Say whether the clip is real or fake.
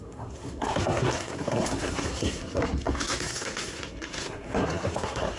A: fake